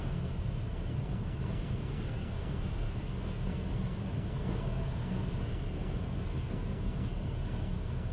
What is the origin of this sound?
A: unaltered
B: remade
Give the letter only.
B